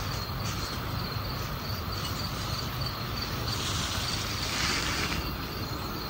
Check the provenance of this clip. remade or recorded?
recorded